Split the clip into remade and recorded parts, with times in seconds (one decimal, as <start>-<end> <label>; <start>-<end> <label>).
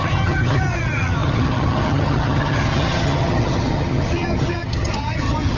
0.0-5.6 remade